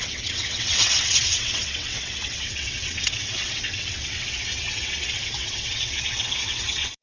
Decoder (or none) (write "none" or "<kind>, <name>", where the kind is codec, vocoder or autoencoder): vocoder, WaveNeXt